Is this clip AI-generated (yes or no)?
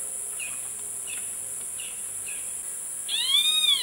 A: no